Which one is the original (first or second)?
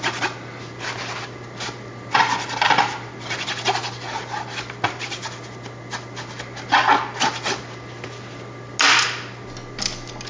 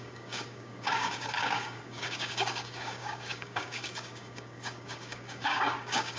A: first